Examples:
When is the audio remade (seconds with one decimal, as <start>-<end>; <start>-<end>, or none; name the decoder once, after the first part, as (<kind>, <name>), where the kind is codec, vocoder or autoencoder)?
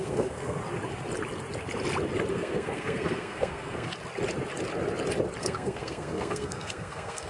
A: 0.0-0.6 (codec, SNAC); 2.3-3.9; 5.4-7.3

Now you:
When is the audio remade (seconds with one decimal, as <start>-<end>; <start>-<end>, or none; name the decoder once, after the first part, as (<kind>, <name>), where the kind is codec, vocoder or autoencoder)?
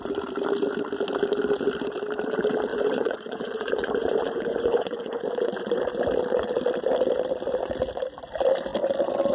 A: 2.7-5.8 (vocoder, Vocos)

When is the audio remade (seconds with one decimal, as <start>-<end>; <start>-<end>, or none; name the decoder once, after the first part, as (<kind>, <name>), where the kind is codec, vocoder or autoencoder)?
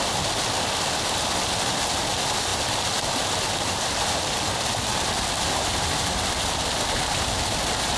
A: none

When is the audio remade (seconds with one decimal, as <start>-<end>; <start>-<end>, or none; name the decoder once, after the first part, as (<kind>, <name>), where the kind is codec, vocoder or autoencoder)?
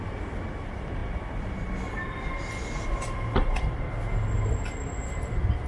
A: none